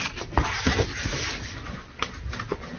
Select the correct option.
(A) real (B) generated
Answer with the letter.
A